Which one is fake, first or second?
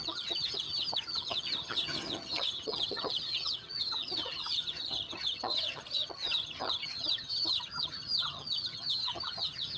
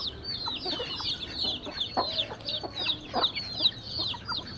first